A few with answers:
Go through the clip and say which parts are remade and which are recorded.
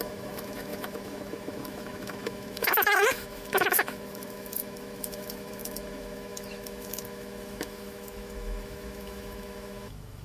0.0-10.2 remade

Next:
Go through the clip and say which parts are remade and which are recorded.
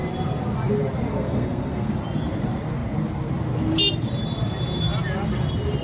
0.0-1.1 recorded; 1.1-1.9 remade; 1.9-5.8 recorded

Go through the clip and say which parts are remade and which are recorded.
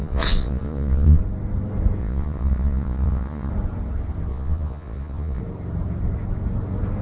0.0-1.2 remade; 1.2-2.0 recorded; 2.0-3.5 remade; 3.5-4.3 recorded; 4.3-5.4 remade; 5.4-7.0 recorded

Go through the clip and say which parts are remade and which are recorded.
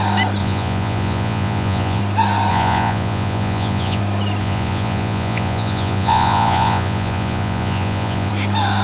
0.0-0.4 recorded; 0.4-2.0 remade; 2.0-2.5 recorded; 2.5-4.0 remade; 4.0-4.4 recorded; 4.4-8.3 remade; 8.3-8.8 recorded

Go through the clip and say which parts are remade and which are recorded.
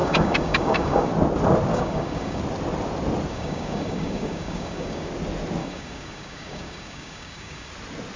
0.0-1.1 remade; 1.1-1.7 recorded; 1.7-2.4 remade; 2.4-3.3 recorded; 3.3-5.1 remade; 5.1-5.6 recorded; 5.6-7.7 remade; 7.7-8.2 recorded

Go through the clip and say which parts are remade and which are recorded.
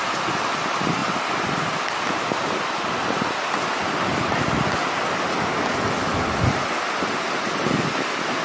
0.0-8.4 recorded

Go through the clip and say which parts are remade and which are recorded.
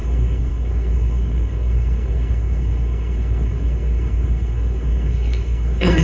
0.0-6.0 remade